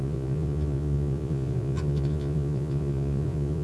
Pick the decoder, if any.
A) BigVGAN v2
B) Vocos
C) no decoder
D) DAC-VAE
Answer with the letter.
B